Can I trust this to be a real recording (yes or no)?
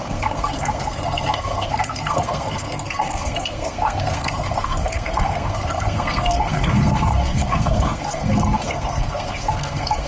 no